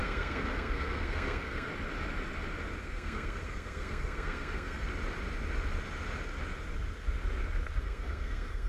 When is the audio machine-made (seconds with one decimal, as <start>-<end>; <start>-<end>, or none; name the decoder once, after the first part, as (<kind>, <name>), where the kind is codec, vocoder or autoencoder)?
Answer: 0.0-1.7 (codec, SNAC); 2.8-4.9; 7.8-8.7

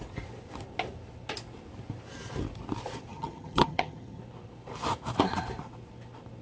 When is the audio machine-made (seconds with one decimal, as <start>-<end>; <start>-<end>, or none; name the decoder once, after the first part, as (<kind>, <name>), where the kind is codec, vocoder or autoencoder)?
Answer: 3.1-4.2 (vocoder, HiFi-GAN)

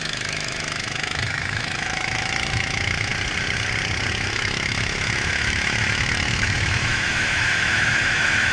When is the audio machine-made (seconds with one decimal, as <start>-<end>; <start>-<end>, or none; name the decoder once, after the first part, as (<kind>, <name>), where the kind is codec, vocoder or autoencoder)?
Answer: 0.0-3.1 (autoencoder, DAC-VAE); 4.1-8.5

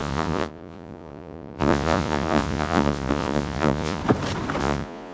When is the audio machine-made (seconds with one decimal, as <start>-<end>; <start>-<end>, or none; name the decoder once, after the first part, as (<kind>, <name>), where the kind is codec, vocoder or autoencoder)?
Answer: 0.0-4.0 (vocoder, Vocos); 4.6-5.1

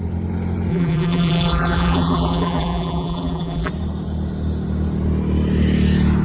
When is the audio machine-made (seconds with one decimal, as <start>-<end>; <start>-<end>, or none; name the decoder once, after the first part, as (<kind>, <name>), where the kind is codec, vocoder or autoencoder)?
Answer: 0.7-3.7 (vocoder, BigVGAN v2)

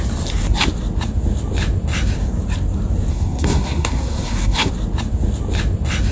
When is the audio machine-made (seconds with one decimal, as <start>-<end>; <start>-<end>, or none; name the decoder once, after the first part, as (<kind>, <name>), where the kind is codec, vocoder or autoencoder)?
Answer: 3.1-4.7 (codec, SNAC)

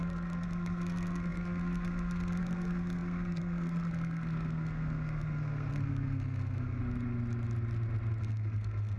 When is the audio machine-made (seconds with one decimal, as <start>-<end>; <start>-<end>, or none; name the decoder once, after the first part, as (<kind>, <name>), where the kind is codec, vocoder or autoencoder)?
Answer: 0.0-6.8 (codec, SNAC); 8.2-9.0